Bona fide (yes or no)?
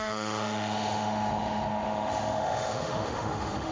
no